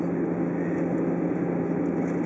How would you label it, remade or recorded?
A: recorded